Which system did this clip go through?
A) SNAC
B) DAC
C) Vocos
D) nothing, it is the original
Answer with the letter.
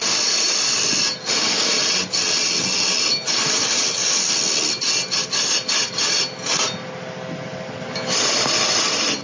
D